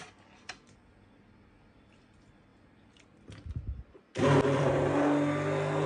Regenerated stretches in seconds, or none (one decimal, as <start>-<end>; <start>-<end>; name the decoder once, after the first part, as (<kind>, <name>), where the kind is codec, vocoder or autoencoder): none